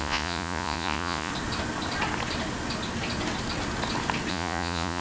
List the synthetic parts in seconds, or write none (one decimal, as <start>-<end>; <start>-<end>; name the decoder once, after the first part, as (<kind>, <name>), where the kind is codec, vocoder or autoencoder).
0.0-1.3 (vocoder, Vocos); 4.3-5.0